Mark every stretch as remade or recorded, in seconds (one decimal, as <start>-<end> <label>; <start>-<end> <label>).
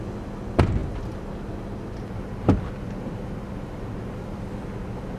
0.0-5.2 recorded